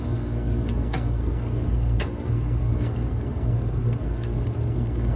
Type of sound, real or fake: fake